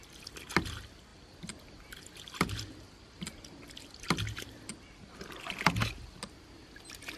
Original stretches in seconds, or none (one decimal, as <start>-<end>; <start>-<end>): 0.0-7.2